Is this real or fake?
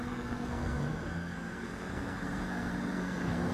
fake